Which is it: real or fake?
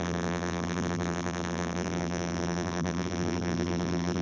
fake